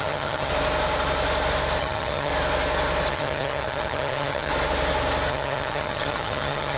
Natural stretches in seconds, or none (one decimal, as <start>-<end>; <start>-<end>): 0.5-1.8; 2.3-3.1; 4.5-5.3